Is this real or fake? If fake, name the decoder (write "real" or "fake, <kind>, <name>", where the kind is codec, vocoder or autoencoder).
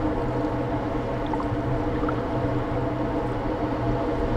real